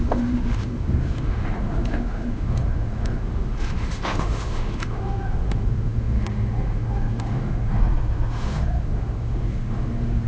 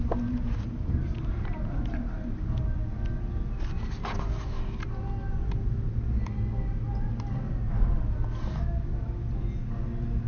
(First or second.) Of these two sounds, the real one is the second